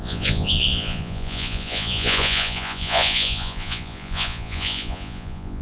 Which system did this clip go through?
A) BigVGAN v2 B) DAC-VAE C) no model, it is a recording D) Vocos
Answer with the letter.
D